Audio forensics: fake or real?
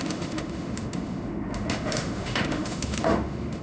fake